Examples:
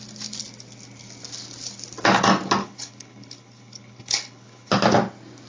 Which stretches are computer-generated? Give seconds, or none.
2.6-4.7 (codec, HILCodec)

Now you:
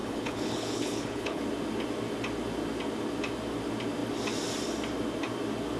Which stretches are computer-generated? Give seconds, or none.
0.0-1.4 (codec, HILCodec)

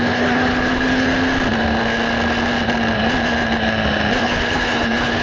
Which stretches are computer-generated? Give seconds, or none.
0.0-1.1 (codec, HILCodec); 4.2-5.2

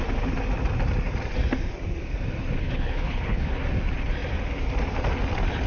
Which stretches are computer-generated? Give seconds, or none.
2.6-3.5 (codec, HILCodec)

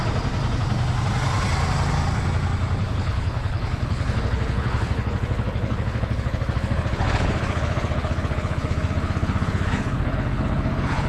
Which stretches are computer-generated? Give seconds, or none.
2.8-11.1 (codec, HILCodec)

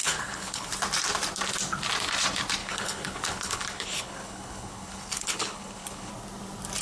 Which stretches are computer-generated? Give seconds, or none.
0.0-0.7 (codec, HILCodec); 2.6-6.1

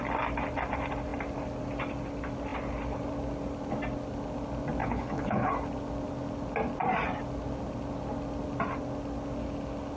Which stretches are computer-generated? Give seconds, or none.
4.8-5.5 (codec, HILCodec)